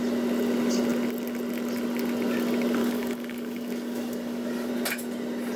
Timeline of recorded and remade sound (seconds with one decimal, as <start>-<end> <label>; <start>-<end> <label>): 0.0-2.8 recorded; 2.8-4.7 remade; 4.7-5.6 recorded